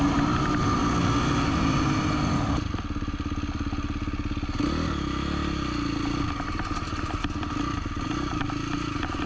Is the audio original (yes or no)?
yes